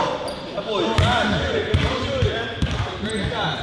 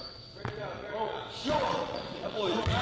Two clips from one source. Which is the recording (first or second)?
first